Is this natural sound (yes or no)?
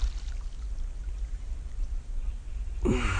yes